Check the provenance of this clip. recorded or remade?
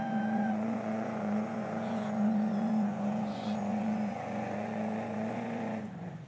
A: remade